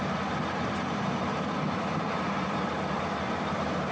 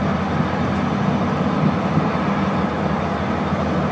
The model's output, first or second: first